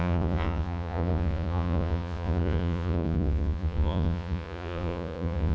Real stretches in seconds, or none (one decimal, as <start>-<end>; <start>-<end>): none